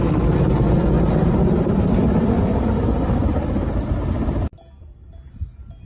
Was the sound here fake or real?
real